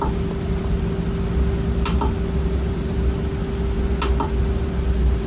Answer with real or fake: real